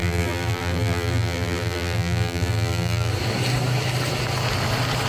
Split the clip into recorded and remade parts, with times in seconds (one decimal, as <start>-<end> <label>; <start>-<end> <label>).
0.0-3.1 remade; 3.1-5.1 recorded